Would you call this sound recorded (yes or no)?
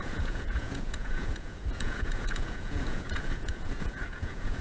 no